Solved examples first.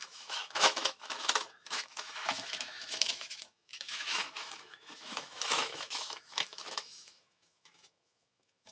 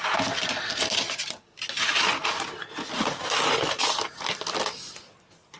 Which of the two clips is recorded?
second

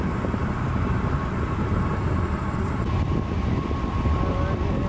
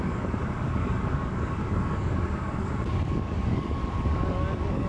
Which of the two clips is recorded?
first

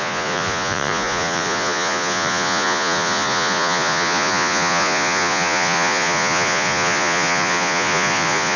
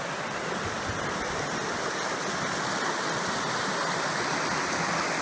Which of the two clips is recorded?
second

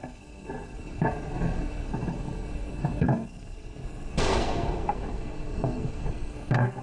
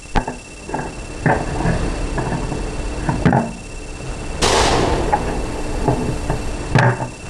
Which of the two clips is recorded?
second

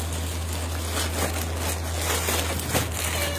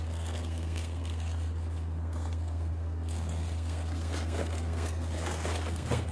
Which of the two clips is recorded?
first